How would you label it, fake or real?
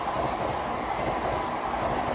real